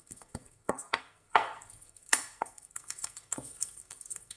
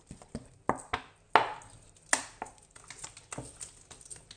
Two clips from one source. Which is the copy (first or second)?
first